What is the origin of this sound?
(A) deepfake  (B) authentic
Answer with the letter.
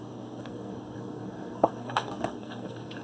A